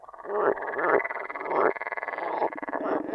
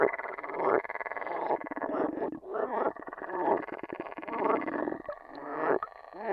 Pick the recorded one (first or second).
first